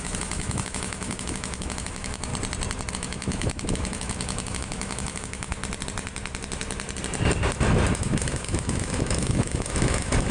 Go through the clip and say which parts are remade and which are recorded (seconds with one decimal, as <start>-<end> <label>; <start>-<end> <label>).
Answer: 0.0-2.3 remade; 2.3-2.9 recorded; 2.9-5.6 remade; 5.6-7.9 recorded; 7.9-10.3 remade

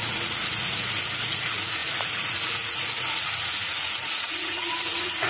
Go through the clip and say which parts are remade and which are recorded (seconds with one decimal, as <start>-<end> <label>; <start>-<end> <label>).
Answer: 0.0-5.3 remade

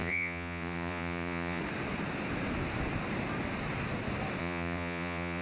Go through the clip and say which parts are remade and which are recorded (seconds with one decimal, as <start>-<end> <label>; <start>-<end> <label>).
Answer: 0.0-1.6 remade; 1.6-4.4 recorded; 4.4-5.4 remade

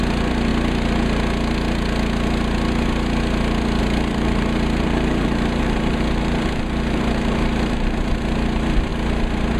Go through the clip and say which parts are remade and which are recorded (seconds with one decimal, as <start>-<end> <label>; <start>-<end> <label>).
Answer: 0.0-0.5 remade; 0.5-3.8 recorded; 3.8-8.9 remade; 8.9-9.6 recorded